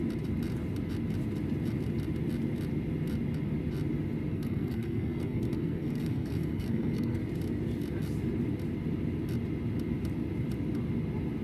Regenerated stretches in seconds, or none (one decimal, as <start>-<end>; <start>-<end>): 4.3-7.2